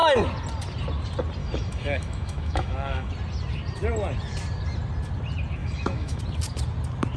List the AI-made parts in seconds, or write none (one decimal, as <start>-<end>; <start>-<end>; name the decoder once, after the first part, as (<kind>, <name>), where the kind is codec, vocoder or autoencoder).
1.4-3.1 (autoencoder, DAC-VAE); 5.6-6.2